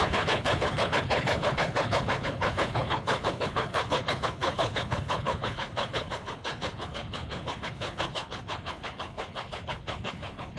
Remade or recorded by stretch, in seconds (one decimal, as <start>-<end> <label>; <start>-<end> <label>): 0.0-10.6 remade